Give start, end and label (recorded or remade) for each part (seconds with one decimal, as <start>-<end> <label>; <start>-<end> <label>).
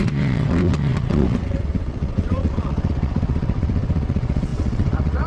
0.0-5.3 remade